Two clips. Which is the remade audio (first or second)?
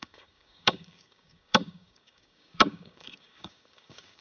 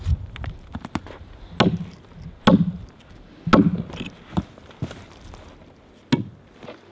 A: first